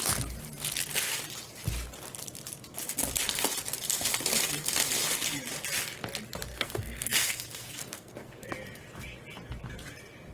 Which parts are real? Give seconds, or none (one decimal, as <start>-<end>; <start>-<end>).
0.0-6.5; 8.5-10.3